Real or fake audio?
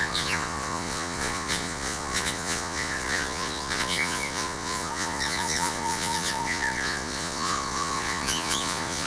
fake